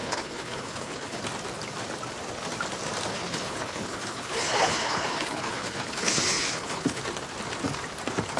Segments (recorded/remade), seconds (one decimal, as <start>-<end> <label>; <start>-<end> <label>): 0.0-1.2 remade; 1.2-3.1 recorded; 3.1-7.0 remade; 7.0-8.4 recorded